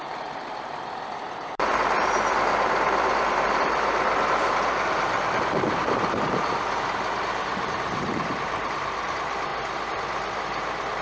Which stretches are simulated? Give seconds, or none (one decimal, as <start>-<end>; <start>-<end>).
0.0-9.5; 10.4-11.0